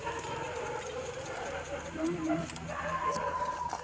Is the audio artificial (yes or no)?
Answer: no